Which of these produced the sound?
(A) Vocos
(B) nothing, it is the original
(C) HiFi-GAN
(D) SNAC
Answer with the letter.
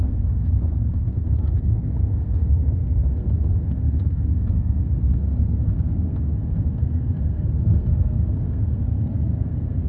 D